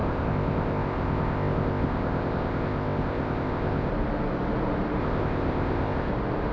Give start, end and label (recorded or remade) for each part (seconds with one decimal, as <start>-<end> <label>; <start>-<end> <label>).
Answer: 0.0-3.9 remade; 3.9-5.0 recorded; 5.0-6.1 remade; 6.1-6.5 recorded